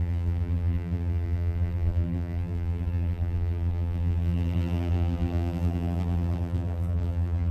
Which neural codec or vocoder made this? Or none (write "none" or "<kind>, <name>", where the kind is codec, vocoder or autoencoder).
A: vocoder, BigVGAN v2